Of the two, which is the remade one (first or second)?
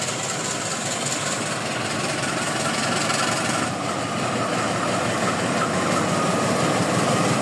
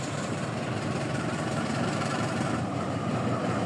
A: second